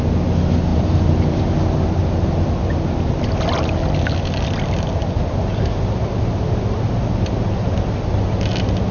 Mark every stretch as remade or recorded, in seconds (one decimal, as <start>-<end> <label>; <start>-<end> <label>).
0.0-0.7 recorded; 0.7-1.4 remade; 1.4-8.9 recorded